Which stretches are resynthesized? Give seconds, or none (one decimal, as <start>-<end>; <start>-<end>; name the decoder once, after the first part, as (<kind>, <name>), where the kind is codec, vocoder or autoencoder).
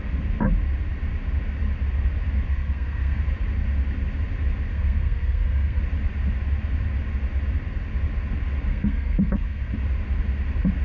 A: 2.5-3.2 (codec, SNAC); 4.7-5.8; 8.7-9.7